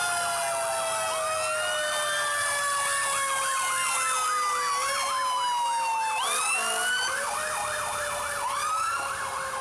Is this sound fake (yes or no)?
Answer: no